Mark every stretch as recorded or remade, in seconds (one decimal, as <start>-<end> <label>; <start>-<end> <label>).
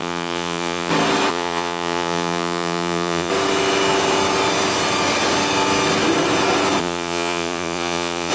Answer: 0.0-0.9 remade; 0.9-1.3 recorded; 1.3-3.3 remade; 3.3-6.8 recorded; 6.8-8.3 remade